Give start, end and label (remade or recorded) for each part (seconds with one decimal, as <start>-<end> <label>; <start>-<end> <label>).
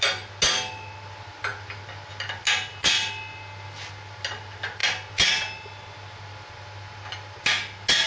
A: 0.0-8.1 recorded